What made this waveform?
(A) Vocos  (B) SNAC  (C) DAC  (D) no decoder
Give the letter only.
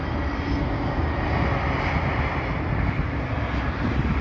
D